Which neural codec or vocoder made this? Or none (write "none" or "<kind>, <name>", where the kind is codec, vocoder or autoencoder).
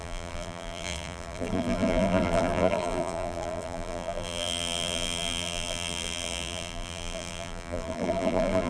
vocoder, BigVGAN v2